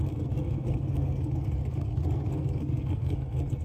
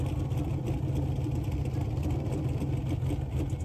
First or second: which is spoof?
first